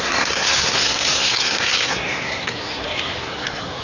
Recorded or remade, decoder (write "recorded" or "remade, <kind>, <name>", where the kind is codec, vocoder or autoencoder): remade, codec, SNAC